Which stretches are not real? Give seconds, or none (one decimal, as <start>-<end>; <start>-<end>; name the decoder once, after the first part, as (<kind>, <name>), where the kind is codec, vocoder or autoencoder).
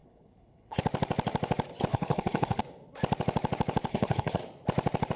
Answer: 0.0-0.8 (codec, HILCodec); 1.9-2.6; 3.9-4.4